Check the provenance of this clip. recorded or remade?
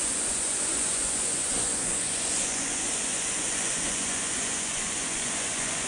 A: remade